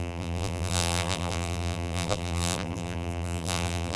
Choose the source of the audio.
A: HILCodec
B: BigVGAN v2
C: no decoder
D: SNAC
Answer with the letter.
B